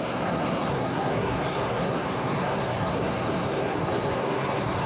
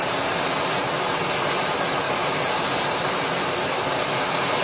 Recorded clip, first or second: second